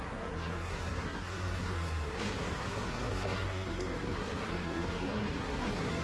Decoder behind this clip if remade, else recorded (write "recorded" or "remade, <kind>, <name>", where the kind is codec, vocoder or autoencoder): remade, codec, SNAC